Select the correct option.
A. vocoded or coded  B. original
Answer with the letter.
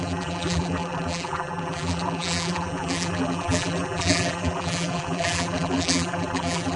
A